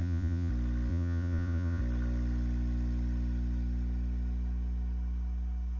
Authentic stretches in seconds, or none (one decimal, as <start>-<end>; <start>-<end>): 0.5-0.9; 1.8-5.8